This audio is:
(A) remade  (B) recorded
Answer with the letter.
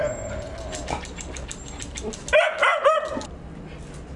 B